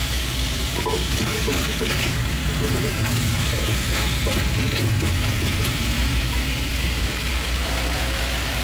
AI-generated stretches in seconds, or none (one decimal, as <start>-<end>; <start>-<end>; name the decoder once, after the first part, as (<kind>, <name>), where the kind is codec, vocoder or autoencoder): 0.0-2.4 (codec, DAC); 2.9-3.5; 6.2-8.6

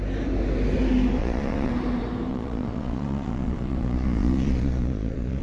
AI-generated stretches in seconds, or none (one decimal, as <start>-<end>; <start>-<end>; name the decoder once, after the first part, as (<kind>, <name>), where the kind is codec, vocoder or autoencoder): 1.2-1.7 (vocoder, Vocos); 2.3-5.4

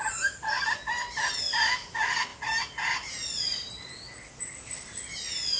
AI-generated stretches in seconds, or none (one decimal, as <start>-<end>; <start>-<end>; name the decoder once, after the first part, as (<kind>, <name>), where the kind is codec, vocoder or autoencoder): none

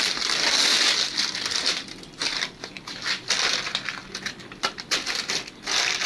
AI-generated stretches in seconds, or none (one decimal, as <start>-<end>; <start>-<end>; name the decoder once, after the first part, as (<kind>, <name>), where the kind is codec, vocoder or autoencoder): 0.0-0.7 (vocoder, BigVGAN v2); 2.0-6.1

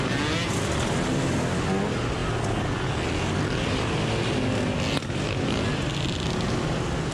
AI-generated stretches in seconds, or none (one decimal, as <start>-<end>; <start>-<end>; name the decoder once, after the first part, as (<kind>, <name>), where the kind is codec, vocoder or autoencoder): none